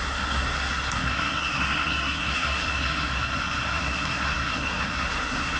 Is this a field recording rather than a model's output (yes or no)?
no